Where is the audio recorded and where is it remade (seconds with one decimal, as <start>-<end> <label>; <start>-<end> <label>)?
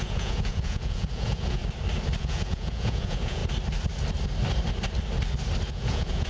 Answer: 0.0-1.6 remade; 1.6-2.2 recorded; 2.2-3.4 remade; 3.4-5.7 recorded; 5.7-6.3 remade